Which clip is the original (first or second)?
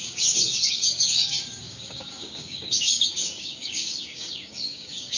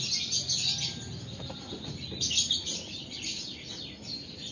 second